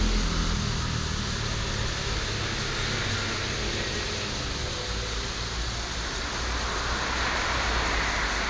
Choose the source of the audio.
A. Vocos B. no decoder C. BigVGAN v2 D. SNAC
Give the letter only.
B